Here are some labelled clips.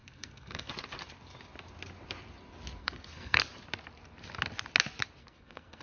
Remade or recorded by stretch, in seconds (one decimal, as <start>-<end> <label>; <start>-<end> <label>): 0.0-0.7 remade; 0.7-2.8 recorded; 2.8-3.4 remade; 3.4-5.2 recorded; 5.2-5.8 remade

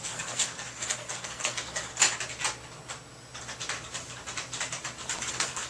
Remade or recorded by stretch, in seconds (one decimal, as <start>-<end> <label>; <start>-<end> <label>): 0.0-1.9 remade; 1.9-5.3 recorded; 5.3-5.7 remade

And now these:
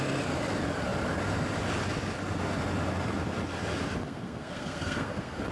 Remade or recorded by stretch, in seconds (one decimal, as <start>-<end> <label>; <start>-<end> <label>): 0.0-4.0 recorded; 4.0-5.5 remade